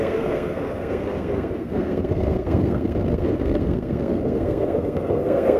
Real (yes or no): no